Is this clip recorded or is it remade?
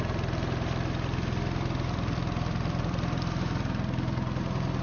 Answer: recorded